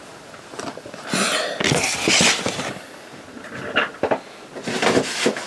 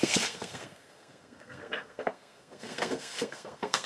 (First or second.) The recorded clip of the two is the first